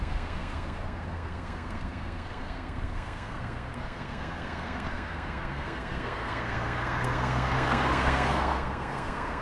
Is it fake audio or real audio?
fake